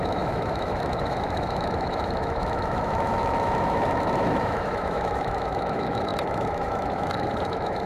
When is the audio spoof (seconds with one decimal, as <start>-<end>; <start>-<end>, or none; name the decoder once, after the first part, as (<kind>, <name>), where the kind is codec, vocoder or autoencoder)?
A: 0.0-7.9 (autoencoder, DAC-VAE)